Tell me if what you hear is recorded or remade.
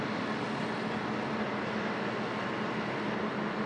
recorded